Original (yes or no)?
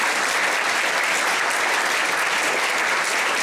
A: yes